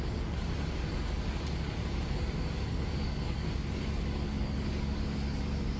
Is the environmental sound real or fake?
fake